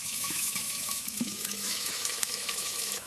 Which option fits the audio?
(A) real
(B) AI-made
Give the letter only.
B